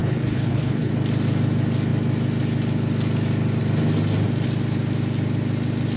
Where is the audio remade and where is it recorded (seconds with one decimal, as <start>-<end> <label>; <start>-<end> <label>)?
0.0-0.9 remade; 0.9-6.0 recorded